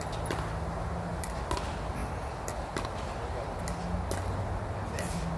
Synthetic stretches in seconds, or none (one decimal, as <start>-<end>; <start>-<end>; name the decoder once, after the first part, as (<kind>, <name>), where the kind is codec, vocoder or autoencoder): none